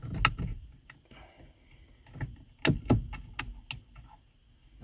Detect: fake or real real